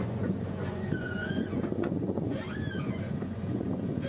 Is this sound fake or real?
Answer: fake